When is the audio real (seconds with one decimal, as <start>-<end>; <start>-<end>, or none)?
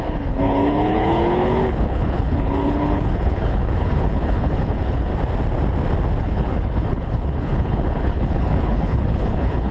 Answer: 5.1-6.2